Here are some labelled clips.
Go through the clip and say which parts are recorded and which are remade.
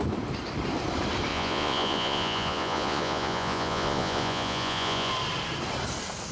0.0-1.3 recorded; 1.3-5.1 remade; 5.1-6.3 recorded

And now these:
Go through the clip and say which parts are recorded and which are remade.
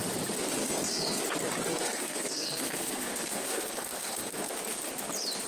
0.0-0.6 recorded; 0.6-1.2 remade; 1.2-1.7 recorded; 1.7-4.5 remade; 4.5-5.5 recorded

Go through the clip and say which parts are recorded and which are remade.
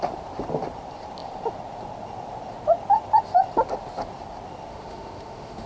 0.0-4.7 recorded; 4.7-5.7 remade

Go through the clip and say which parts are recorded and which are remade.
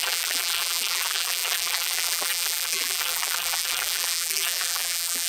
0.0-5.3 remade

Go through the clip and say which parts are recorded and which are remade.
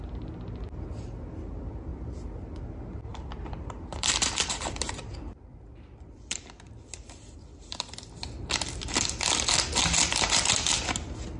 0.0-1.9 recorded; 1.9-2.6 remade; 2.6-3.1 recorded; 3.1-8.2 remade; 8.2-11.4 recorded